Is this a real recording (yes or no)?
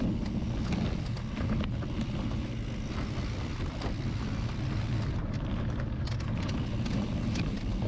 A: yes